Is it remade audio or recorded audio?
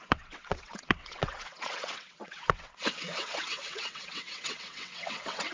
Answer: remade